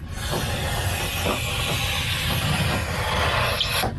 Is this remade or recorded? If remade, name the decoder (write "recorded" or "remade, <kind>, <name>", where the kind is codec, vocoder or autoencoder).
recorded